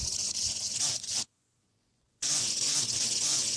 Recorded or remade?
remade